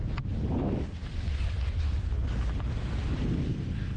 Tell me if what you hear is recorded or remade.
recorded